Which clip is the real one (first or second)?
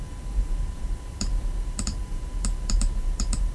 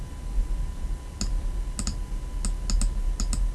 second